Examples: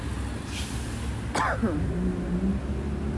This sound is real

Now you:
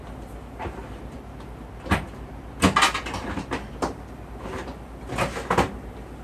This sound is real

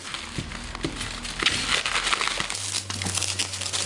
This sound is real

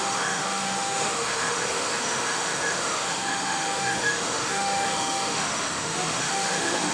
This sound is fake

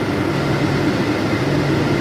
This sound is real